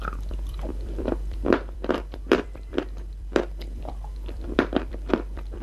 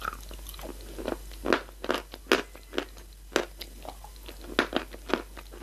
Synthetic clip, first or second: first